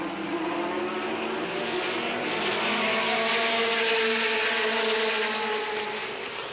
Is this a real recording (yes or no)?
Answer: yes